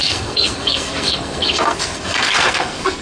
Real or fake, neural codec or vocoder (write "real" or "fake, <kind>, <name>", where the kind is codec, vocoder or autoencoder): fake, codec, SNAC